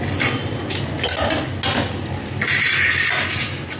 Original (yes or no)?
yes